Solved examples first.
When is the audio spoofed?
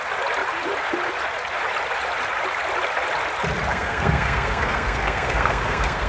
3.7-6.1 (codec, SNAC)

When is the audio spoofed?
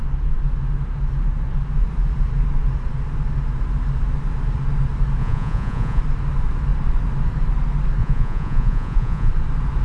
5.2-6.0 (vocoder, Vocos); 8.0-9.3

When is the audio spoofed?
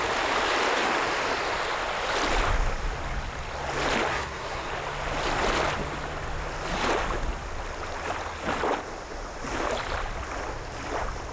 4.1-4.7 (codec, SNAC)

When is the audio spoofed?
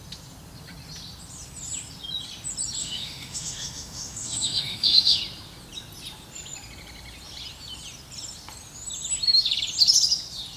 2.8-5.2 (autoencoder, DAC-VAE)